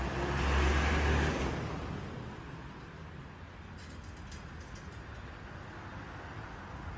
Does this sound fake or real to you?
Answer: real